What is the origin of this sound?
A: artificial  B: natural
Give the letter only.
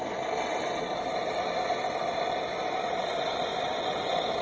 B